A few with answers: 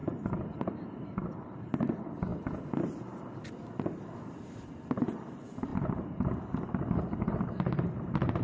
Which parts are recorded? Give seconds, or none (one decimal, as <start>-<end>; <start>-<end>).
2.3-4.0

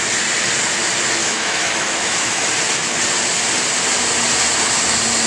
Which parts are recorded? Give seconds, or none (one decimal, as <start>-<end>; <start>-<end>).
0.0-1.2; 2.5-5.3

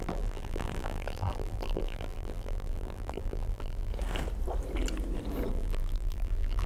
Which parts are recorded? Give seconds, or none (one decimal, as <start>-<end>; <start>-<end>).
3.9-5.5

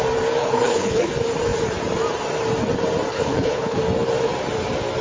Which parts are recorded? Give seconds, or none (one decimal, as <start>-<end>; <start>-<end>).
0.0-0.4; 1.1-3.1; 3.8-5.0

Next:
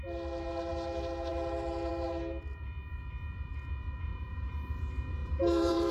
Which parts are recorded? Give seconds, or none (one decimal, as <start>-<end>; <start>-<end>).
0.0-4.1; 4.8-5.2

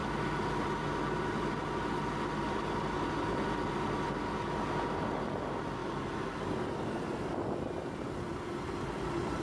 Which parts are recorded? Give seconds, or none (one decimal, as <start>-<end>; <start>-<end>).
0.0-9.4